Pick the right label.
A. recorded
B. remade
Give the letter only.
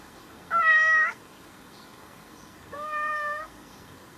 B